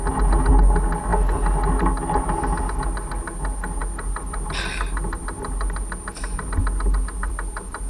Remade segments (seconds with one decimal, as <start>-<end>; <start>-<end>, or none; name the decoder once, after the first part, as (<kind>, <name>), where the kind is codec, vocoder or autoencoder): none